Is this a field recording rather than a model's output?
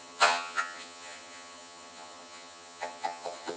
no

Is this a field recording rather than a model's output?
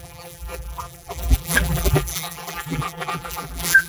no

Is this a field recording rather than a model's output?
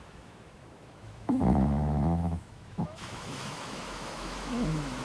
no